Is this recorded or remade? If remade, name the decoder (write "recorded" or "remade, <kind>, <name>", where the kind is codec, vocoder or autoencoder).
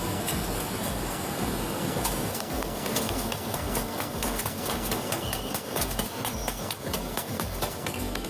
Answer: remade, codec, SNAC